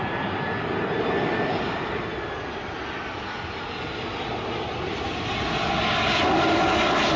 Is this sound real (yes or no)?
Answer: yes